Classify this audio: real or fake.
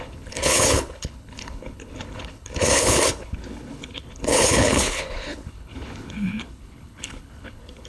fake